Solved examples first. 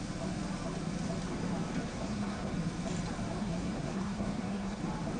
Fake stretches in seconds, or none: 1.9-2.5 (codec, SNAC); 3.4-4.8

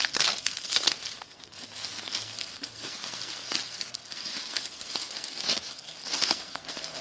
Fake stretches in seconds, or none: 0.0-7.0 (codec, SNAC)

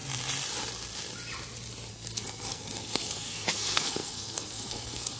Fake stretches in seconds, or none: 1.9-5.2 (codec, SNAC)

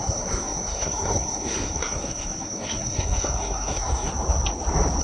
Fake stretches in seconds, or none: 0.0-4.1 (codec, SNAC)

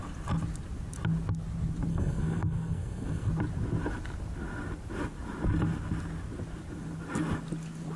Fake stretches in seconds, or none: 1.9-3.3 (codec, SNAC)

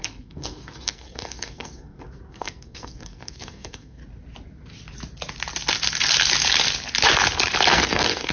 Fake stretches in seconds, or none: 0.0-4.0 (codec, SNAC); 7.7-8.3

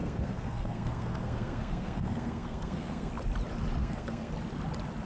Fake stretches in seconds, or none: 0.0-3.1 (codec, SNAC); 3.8-4.3